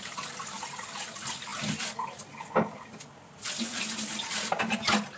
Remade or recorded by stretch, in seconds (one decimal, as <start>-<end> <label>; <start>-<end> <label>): 0.0-5.2 recorded